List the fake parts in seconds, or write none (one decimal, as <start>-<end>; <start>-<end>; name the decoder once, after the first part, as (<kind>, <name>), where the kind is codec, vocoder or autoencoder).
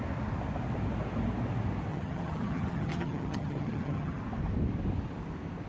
1.9-4.2 (vocoder, HiFi-GAN)